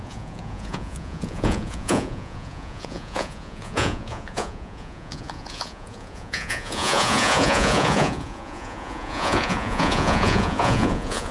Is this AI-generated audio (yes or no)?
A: yes